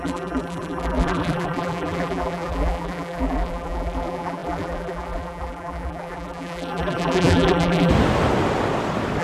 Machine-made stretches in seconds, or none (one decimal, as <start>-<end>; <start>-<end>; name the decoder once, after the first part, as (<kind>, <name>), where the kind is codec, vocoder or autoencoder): 0.0-7.9 (vocoder, BigVGAN v2)